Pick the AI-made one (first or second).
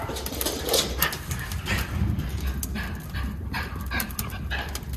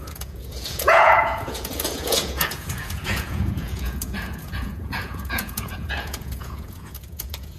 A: second